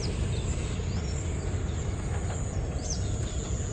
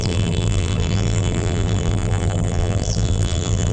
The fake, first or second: second